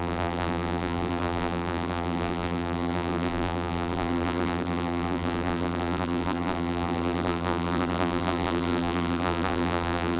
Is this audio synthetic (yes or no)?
yes